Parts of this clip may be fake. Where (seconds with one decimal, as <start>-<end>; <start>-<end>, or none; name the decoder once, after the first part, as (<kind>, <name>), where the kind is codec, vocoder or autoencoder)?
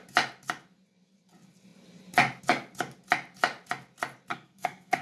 4.3-5.0 (codec, SNAC)